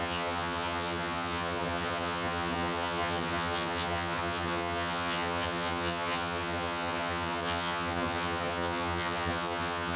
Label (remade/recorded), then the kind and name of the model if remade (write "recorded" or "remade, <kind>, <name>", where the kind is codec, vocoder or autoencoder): remade, vocoder, HiFi-GAN